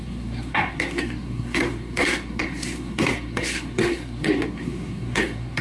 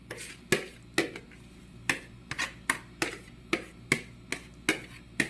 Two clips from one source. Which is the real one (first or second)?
second